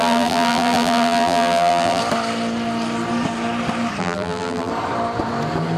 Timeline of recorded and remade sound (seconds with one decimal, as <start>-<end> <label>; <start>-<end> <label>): 0.0-2.0 remade; 2.0-4.0 recorded; 4.0-4.7 remade; 4.7-5.8 recorded